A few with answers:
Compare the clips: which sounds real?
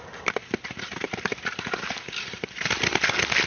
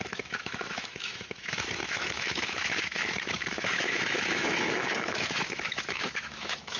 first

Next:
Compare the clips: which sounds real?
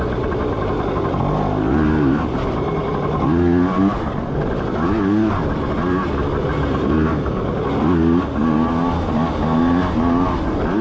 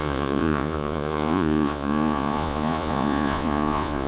first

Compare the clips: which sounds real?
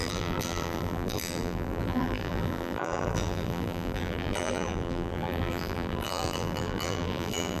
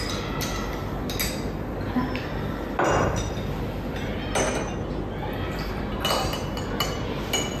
second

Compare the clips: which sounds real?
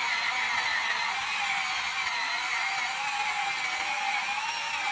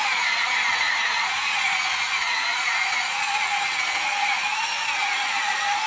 first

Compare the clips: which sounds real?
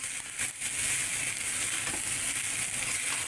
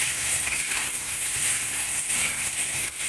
first